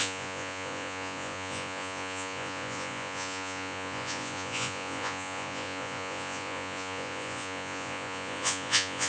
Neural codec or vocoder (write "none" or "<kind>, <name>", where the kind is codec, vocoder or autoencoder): vocoder, Vocos